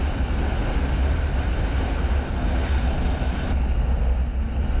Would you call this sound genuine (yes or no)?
yes